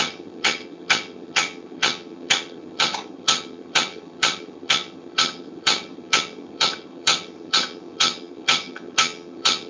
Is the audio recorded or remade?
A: remade